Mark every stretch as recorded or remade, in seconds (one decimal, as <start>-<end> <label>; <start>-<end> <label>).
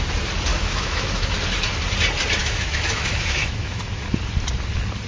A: 0.0-0.5 recorded; 0.5-1.3 remade; 1.3-2.4 recorded; 2.4-3.8 remade; 3.8-5.1 recorded